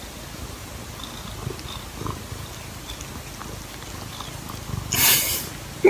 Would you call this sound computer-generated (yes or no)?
no